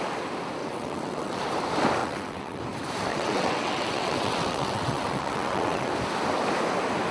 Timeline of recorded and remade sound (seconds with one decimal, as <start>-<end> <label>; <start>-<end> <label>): 0.0-0.6 recorded; 0.6-1.4 remade; 1.4-2.0 recorded; 2.0-2.6 remade; 2.6-3.1 recorded; 3.1-5.9 remade; 5.9-7.1 recorded